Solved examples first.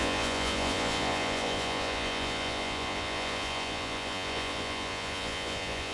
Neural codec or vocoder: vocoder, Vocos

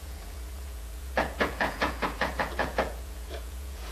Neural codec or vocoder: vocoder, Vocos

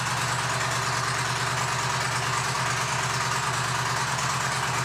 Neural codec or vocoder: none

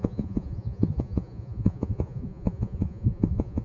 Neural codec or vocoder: vocoder, Vocos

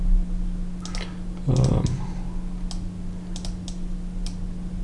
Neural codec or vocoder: none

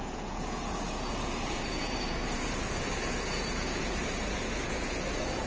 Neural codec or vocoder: vocoder, Vocos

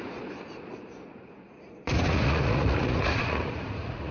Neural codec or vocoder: vocoder, Vocos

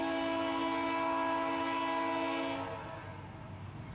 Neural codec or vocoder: none